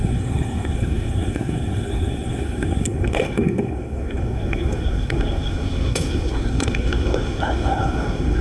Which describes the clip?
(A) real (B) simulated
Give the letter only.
B